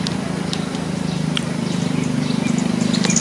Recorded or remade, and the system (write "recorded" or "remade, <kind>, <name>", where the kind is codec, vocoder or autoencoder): recorded